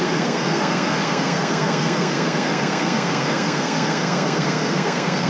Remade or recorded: remade